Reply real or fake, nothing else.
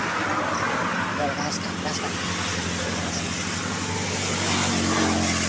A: real